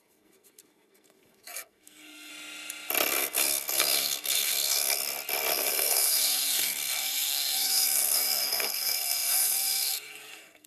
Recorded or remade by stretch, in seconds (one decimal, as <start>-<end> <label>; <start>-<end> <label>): 0.0-2.3 remade; 2.3-3.1 recorded; 3.1-5.0 remade; 5.0-5.5 recorded; 5.5-10.7 remade